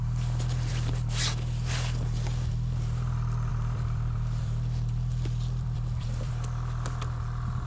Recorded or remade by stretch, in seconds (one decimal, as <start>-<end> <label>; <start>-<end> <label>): 0.0-3.5 recorded; 3.5-6.3 remade; 6.3-7.7 recorded